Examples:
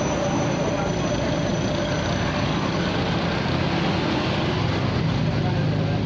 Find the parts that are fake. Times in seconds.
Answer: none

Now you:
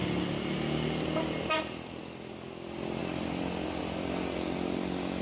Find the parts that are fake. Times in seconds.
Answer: none

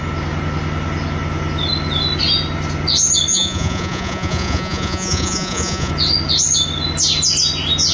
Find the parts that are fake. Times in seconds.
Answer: 3.3-5.9 (vocoder, Vocos)

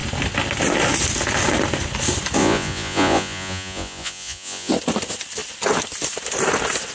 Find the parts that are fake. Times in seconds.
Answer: 2.4-4.7 (vocoder, Vocos)

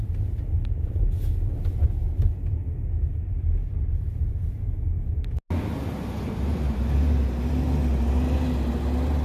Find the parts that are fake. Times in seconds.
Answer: none

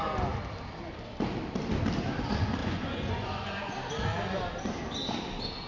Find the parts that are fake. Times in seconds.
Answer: 2.6-3.7 (vocoder, Vocos)

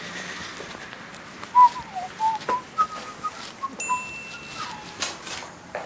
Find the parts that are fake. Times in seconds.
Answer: none

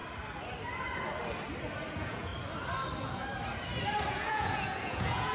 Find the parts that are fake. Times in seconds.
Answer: 1.9-2.3 (vocoder, Vocos); 4.1-5.3